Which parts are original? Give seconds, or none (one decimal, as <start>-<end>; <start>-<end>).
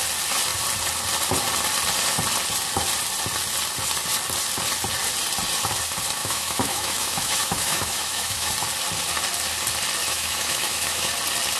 0.0-6.2; 8.5-10.0; 11.1-11.6